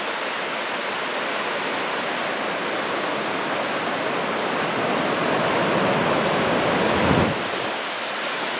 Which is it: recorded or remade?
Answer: recorded